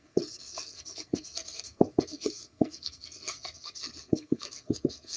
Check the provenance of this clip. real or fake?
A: fake